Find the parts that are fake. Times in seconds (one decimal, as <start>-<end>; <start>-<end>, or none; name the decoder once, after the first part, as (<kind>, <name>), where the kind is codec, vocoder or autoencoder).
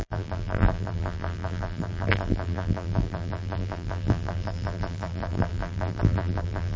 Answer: 0.0-6.8 (vocoder, BigVGAN v2)